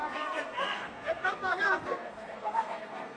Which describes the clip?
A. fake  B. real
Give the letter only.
A